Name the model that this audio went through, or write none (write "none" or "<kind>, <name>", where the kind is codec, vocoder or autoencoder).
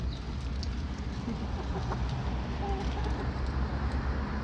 none